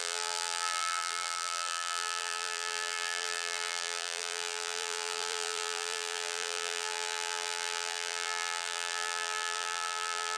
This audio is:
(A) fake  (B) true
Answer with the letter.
A